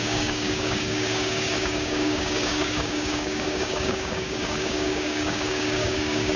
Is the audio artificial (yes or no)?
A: yes